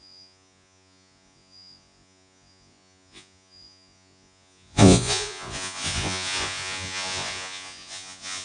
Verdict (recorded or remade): remade